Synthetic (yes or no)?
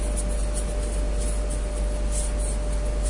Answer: no